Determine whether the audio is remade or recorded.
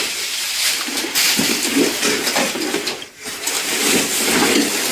recorded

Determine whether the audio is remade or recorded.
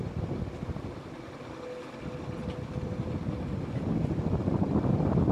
recorded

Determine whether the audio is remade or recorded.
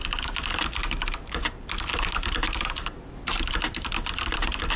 recorded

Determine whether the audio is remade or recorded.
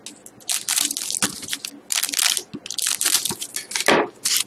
recorded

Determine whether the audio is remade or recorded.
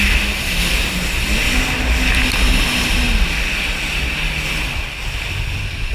recorded